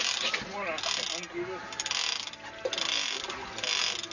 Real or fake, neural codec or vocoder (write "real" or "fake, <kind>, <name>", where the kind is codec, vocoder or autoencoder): real